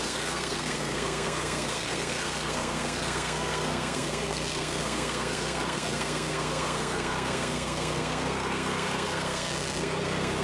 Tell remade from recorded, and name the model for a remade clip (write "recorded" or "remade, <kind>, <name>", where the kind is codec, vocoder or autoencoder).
remade, codec, SNAC